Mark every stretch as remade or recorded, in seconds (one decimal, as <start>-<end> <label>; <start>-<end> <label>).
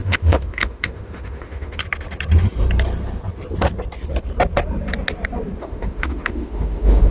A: 0.0-1.8 remade; 1.8-5.6 recorded; 5.6-7.1 remade